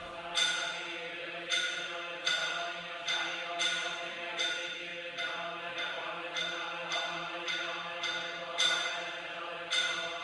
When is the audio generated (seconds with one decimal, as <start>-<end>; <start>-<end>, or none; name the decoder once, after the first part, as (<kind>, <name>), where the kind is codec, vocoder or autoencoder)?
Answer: 0.0-2.4 (vocoder, BigVGAN v2); 3.5-10.2